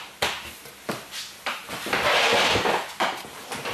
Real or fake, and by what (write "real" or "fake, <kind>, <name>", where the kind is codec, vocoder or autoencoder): fake, vocoder, BigVGAN v2